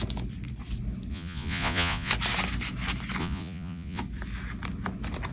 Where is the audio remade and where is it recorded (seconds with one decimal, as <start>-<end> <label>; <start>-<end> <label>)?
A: 0.0-1.1 recorded; 1.1-2.1 remade; 2.1-3.2 recorded; 3.2-4.0 remade; 4.0-5.3 recorded